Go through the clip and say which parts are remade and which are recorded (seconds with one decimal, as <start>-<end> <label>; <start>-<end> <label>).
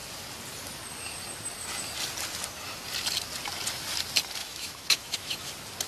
0.0-4.4 recorded; 4.4-5.5 remade; 5.5-5.9 recorded